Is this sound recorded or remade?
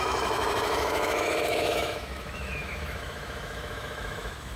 remade